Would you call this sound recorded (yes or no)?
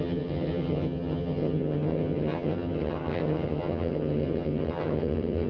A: no